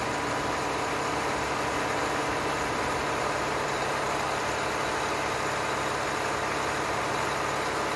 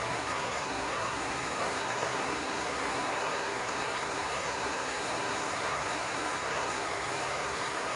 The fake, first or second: second